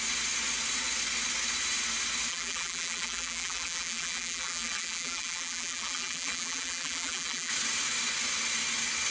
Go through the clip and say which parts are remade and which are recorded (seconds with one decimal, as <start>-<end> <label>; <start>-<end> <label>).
0.0-2.3 recorded; 2.3-7.5 remade; 7.5-9.1 recorded